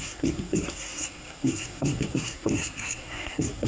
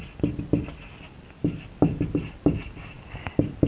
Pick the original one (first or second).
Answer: second